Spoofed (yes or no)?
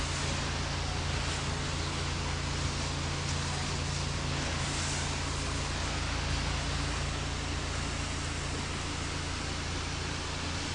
no